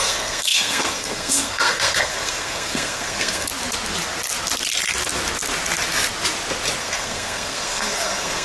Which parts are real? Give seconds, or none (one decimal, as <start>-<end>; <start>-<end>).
3.5-6.8

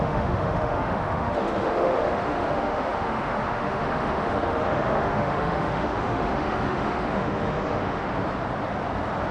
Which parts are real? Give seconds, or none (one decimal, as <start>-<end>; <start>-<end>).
8.1-9.3

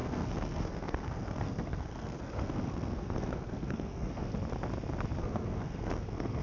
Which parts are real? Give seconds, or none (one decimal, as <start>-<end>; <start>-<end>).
4.3-5.2